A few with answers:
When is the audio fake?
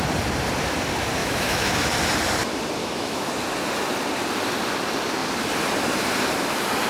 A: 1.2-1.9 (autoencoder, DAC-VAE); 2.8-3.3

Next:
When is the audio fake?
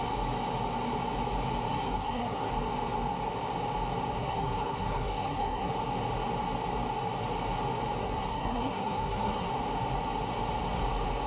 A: 1.7-2.5 (codec, SNAC); 4.2-5.7; 8.0-9.5